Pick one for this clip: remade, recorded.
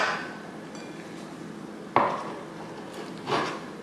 recorded